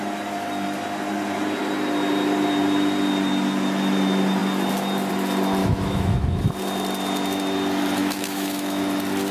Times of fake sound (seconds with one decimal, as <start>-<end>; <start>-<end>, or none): 5.6-6.5; 8.0-8.8